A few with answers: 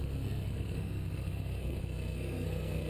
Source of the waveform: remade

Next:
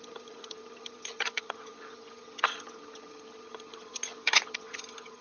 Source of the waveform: remade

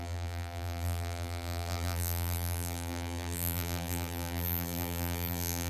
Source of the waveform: remade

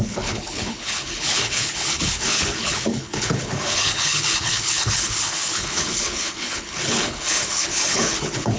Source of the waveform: remade